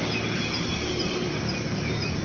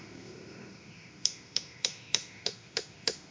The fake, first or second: second